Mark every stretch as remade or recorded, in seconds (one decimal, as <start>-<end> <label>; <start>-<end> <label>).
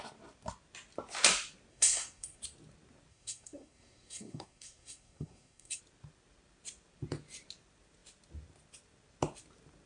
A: 0.0-1.7 recorded; 1.7-2.4 remade; 2.4-3.1 recorded; 3.1-5.8 remade; 5.8-9.9 recorded